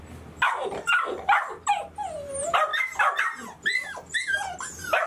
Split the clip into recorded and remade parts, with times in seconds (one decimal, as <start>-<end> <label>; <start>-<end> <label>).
0.0-5.1 recorded